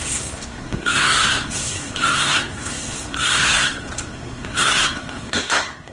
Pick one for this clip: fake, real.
fake